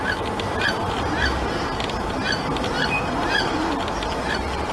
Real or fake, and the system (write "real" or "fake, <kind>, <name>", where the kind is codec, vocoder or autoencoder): real